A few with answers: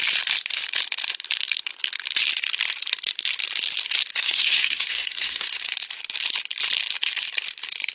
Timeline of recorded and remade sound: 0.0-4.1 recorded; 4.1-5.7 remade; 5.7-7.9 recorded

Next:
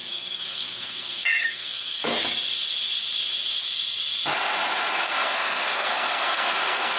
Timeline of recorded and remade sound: 0.0-2.1 remade; 2.1-4.9 recorded; 4.9-7.0 remade

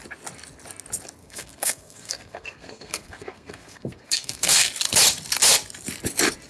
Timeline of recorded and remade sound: 0.0-1.2 recorded; 1.2-4.7 remade; 4.7-6.5 recorded

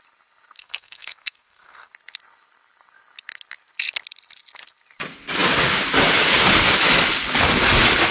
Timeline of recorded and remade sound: 0.0-0.6 recorded; 0.6-1.9 remade; 1.9-8.1 recorded